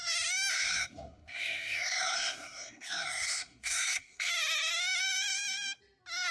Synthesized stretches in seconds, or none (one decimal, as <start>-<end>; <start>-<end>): 0.5-4.3